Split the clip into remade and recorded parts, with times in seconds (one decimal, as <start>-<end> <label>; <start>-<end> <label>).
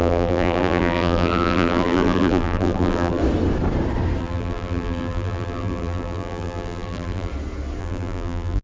0.0-3.2 remade; 3.2-4.2 recorded; 4.2-7.3 remade; 7.3-7.8 recorded; 7.8-8.6 remade